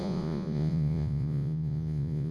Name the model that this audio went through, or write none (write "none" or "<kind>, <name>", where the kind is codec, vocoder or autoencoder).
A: vocoder, Vocos